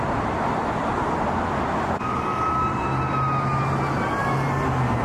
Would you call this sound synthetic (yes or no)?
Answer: no